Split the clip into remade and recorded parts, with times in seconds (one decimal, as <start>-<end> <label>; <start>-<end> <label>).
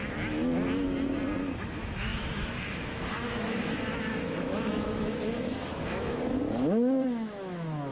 0.0-1.6 recorded; 1.6-7.9 remade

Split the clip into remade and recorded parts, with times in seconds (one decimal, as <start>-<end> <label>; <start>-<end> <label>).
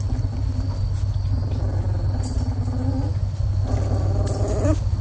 0.0-5.0 recorded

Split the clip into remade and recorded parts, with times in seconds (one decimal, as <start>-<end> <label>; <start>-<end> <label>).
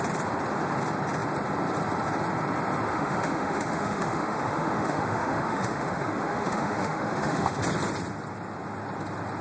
0.0-2.9 recorded; 2.9-7.6 remade; 7.6-9.4 recorded